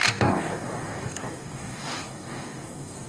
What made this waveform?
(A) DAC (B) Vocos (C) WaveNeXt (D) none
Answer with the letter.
A